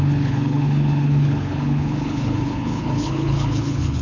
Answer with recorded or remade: remade